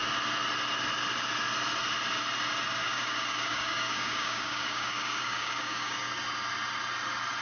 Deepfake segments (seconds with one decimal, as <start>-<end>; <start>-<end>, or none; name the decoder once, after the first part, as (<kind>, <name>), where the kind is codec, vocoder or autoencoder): 2.8-6.1 (codec, DAC)